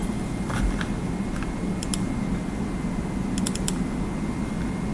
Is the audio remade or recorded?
recorded